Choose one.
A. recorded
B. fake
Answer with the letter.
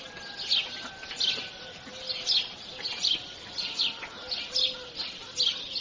A